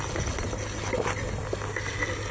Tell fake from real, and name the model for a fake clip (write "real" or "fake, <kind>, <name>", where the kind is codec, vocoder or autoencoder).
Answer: real